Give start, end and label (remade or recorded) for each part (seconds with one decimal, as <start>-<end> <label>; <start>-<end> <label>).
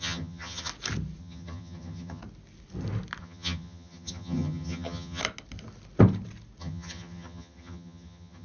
0.0-0.7 remade; 0.7-1.2 recorded; 1.2-2.2 remade; 2.2-3.2 recorded; 3.2-5.2 remade; 5.2-6.6 recorded; 6.6-8.4 remade